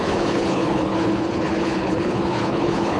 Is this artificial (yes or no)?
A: yes